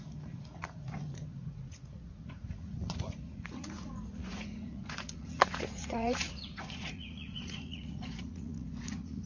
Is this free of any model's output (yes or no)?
no